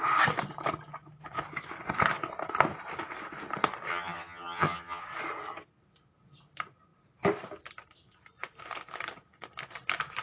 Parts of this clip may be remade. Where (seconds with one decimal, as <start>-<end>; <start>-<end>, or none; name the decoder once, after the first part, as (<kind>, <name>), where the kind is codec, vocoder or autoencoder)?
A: 3.9-5.0 (vocoder, HiFi-GAN)